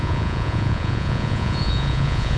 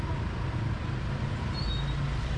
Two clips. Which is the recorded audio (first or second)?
second